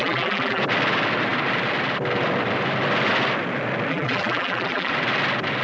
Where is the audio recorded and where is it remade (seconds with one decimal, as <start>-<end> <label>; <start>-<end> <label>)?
0.0-0.6 remade; 0.6-3.9 recorded; 3.9-4.9 remade; 4.9-5.6 recorded